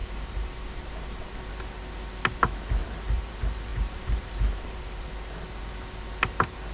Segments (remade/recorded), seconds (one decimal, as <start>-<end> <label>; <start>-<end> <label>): 0.0-1.4 remade; 1.4-2.8 recorded; 2.8-3.3 remade; 3.3-3.7 recorded; 3.7-5.1 remade; 5.1-6.7 recorded